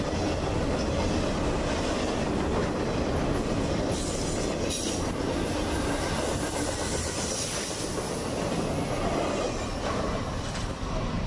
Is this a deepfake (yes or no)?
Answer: no